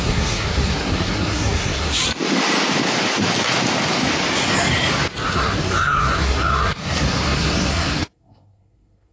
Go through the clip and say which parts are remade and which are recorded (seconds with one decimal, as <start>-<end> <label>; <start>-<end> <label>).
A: 0.0-2.0 remade; 2.0-5.3 recorded; 5.3-9.1 remade